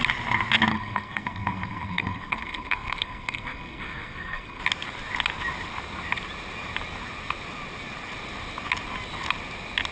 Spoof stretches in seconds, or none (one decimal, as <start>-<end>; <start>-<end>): 0.7-4.6